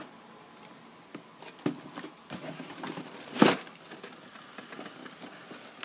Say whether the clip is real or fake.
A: real